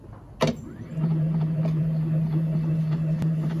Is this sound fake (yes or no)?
no